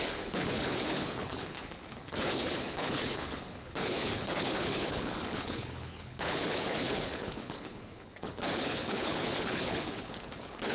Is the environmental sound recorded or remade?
remade